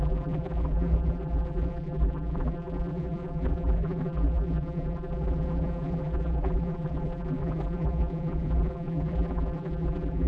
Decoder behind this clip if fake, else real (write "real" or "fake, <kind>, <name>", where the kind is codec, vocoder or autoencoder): fake, vocoder, BigVGAN v2